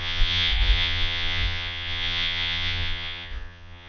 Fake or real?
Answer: fake